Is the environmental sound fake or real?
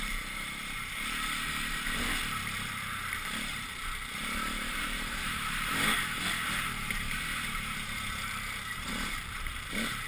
fake